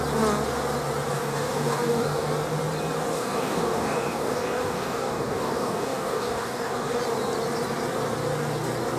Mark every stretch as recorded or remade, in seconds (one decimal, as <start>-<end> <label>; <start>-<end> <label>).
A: 0.0-1.1 recorded; 1.1-2.3 remade; 2.3-3.1 recorded; 3.1-7.0 remade; 7.0-9.0 recorded